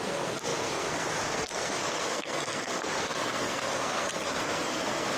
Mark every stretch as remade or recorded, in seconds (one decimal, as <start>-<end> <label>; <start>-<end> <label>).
0.0-5.2 remade